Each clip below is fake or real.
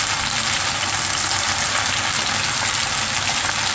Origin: real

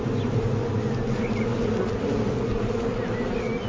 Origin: real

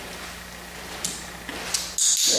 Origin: real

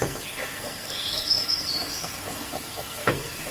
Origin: fake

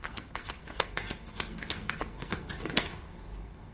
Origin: fake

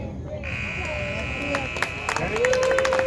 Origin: real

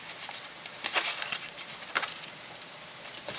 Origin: real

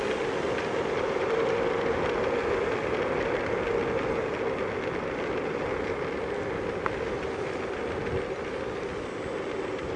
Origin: real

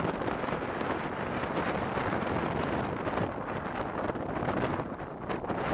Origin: real